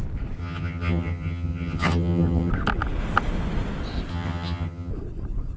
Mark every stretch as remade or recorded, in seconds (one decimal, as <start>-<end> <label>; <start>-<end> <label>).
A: 0.0-0.4 recorded; 0.4-2.5 remade; 2.5-4.1 recorded; 4.1-4.9 remade; 4.9-5.6 recorded